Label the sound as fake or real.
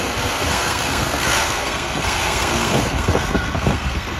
fake